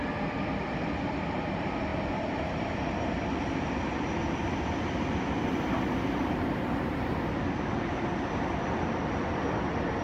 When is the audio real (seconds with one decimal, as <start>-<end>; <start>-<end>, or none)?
0.0-10.0